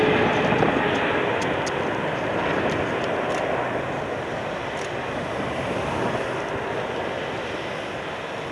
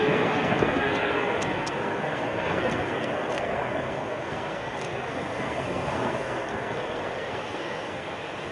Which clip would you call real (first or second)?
first